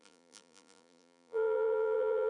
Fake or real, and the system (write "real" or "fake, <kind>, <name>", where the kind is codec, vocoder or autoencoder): fake, vocoder, BigVGAN v2